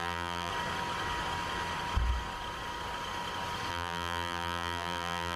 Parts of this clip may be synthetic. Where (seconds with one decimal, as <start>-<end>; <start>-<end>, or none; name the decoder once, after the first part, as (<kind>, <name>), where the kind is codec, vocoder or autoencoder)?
0.0-0.5 (vocoder, BigVGAN v2); 3.7-5.4